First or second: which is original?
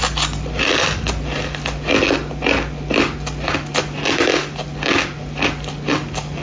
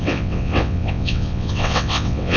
first